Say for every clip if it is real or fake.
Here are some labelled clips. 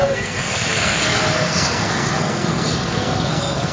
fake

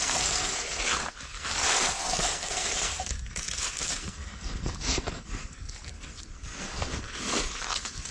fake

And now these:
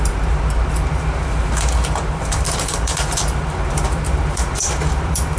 fake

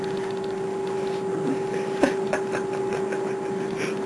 real